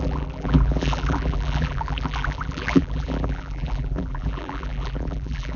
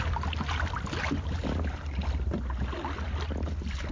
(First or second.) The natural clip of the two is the second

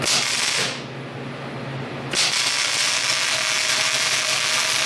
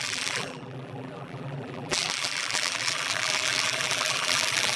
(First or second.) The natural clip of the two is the first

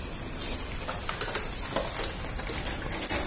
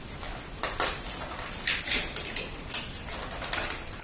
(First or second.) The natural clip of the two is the first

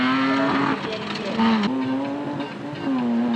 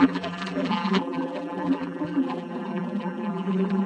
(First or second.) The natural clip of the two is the first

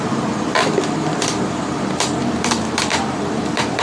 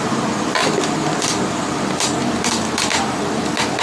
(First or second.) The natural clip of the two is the second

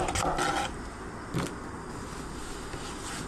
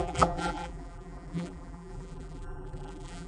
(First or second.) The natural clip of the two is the first